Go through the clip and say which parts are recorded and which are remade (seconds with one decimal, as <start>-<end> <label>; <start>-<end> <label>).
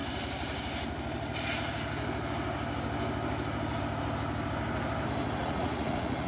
0.0-5.4 recorded; 5.4-6.3 remade